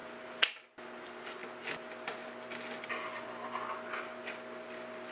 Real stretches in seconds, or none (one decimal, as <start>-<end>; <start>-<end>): 0.0-5.1